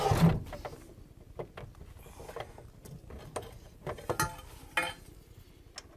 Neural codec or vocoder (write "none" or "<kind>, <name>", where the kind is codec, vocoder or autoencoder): none